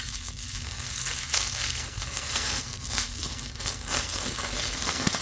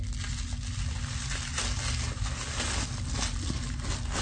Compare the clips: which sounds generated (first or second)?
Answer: first